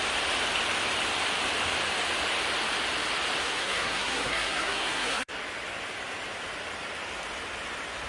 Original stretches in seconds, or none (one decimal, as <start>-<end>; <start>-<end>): 0.0-3.4; 5.3-8.1